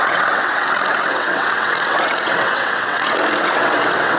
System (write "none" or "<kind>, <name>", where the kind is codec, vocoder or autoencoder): vocoder, WaveNeXt